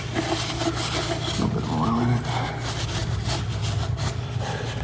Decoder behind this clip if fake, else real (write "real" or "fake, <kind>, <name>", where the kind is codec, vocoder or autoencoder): real